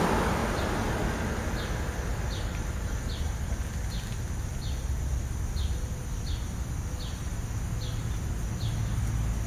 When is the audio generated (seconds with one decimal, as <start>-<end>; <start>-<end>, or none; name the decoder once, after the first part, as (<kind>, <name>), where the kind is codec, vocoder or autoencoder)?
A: none